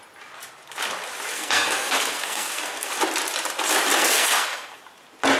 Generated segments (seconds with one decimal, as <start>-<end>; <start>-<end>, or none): 1.3-2.9; 3.9-4.8